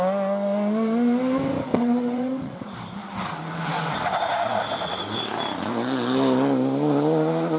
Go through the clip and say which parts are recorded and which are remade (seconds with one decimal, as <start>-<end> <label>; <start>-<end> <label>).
0.0-1.7 recorded; 1.7-2.7 remade; 2.7-7.6 recorded